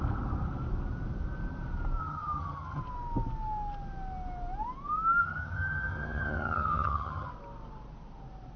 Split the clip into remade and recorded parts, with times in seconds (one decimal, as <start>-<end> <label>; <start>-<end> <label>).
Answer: 0.0-2.0 recorded; 2.0-2.8 remade; 2.8-5.2 recorded; 5.2-7.3 remade; 7.3-8.6 recorded